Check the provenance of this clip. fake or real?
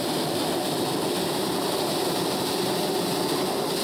real